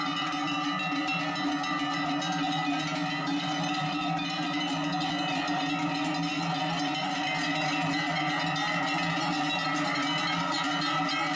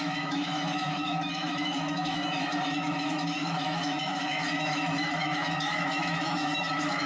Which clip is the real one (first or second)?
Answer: first